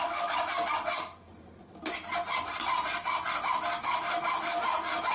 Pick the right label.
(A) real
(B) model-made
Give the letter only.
A